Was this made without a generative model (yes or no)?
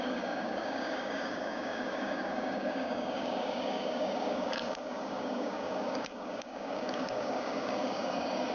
no